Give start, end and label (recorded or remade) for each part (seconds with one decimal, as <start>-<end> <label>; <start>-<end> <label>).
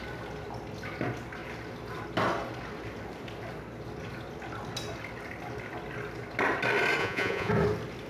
0.0-7.0 recorded; 7.0-7.5 remade; 7.5-8.1 recorded